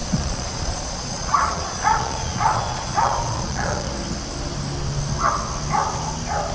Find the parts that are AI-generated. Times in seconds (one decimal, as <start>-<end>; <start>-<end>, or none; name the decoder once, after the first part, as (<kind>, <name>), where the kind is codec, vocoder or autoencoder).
0.0-3.9 (vocoder, Vocos)